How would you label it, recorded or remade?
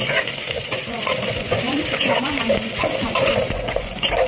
remade